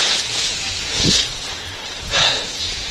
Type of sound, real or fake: fake